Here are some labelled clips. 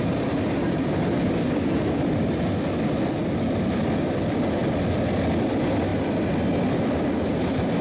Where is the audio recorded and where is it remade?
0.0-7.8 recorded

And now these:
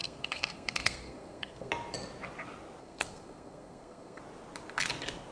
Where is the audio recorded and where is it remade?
0.0-1.7 remade; 1.7-2.8 recorded; 2.8-4.2 remade; 4.2-5.3 recorded